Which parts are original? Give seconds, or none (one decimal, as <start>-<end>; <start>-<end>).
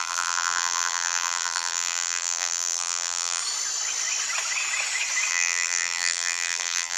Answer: 3.4-5.3